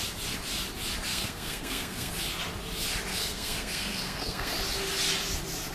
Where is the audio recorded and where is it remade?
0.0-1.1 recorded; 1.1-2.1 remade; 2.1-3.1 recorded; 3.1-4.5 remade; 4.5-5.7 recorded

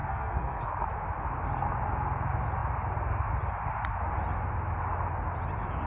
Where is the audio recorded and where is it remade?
0.0-0.7 remade; 0.7-5.9 recorded

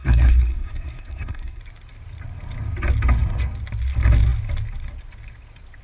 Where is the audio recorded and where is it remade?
0.0-1.6 remade; 1.6-5.8 recorded

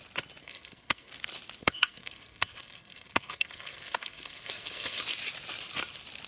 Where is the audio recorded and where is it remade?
0.0-0.4 recorded; 0.4-1.1 remade; 1.1-1.6 recorded; 1.6-5.0 remade; 5.0-6.3 recorded